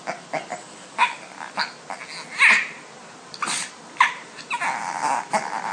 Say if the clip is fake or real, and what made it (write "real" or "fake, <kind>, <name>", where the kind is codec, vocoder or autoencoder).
real